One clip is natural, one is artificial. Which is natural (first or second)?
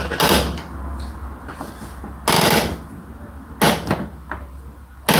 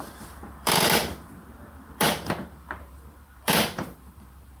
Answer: first